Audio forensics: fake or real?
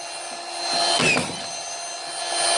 real